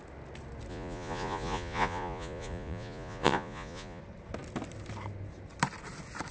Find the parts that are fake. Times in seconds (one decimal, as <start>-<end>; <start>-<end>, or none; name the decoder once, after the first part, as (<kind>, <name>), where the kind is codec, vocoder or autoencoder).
0.7-4.0 (vocoder, Vocos)